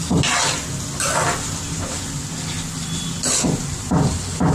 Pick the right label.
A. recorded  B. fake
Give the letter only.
A